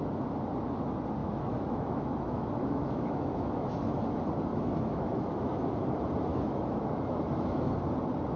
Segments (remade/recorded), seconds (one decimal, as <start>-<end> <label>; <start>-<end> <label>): 0.0-1.2 recorded; 1.2-3.9 remade; 3.9-4.5 recorded; 4.5-5.6 remade; 5.6-6.3 recorded; 6.3-7.7 remade; 7.7-8.4 recorded